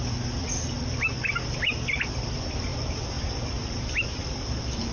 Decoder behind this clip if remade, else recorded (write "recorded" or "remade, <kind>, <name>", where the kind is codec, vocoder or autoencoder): recorded